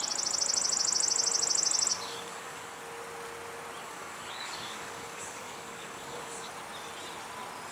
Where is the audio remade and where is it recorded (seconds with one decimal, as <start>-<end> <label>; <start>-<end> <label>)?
0.0-1.9 recorded; 1.9-2.8 remade; 2.8-3.8 recorded; 3.8-6.5 remade; 6.5-7.7 recorded